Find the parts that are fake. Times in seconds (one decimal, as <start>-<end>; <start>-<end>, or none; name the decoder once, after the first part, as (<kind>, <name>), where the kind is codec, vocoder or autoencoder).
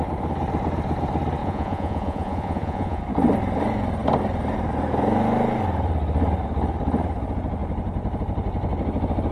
1.4-3.0 (vocoder, Vocos)